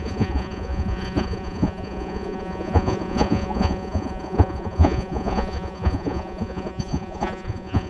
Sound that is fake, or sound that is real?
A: fake